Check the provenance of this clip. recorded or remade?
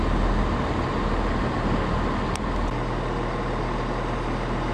recorded